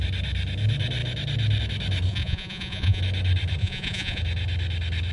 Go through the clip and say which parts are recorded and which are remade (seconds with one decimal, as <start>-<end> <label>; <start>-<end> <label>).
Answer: 0.0-2.1 recorded; 2.1-3.0 remade; 3.0-3.6 recorded; 3.6-4.2 remade; 4.2-5.1 recorded